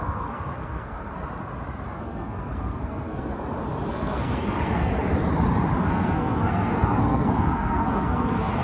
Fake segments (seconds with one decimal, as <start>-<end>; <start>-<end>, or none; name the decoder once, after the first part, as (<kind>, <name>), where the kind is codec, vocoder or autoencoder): 0.0-1.2 (codec, SNAC); 2.0-3.3; 3.9-4.9; 5.8-8.6